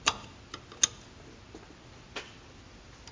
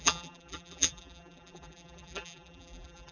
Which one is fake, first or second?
second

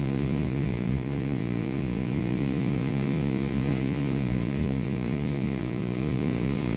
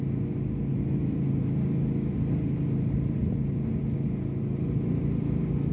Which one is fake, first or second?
first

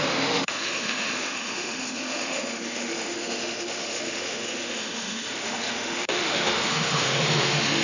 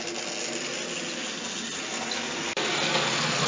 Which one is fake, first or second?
first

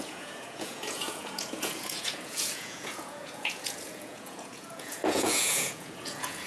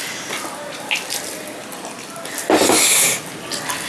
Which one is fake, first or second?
first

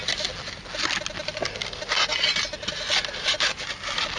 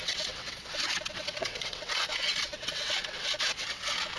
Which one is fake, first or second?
second